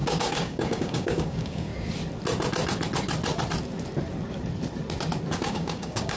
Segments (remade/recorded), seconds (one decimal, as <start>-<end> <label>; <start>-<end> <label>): 0.0-1.7 remade; 1.7-5.4 recorded; 5.4-6.2 remade